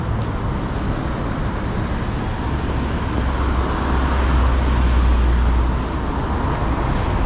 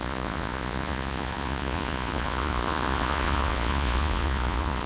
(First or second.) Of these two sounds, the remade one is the second